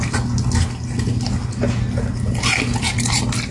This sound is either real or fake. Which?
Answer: real